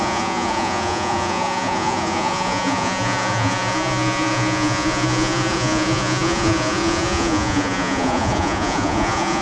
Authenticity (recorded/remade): remade